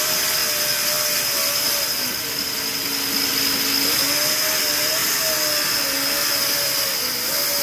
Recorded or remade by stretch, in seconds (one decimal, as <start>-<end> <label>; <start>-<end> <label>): 0.0-7.6 recorded